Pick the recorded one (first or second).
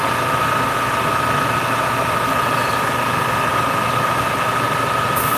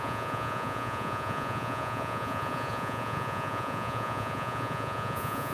first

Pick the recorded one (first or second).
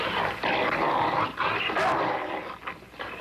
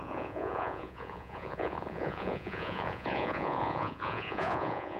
first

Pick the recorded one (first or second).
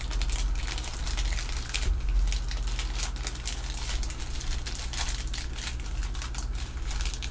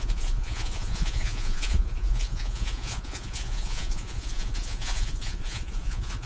first